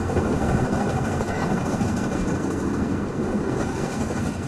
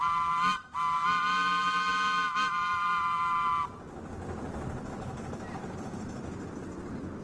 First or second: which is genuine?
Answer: second